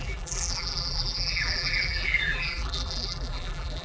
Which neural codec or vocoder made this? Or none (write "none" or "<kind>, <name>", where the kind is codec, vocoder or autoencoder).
vocoder, BigVGAN v2